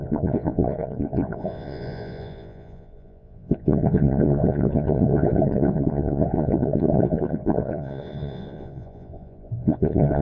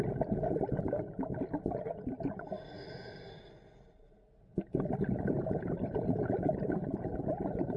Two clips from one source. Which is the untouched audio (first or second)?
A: second